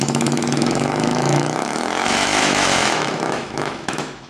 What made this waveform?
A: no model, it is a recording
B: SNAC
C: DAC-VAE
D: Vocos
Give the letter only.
C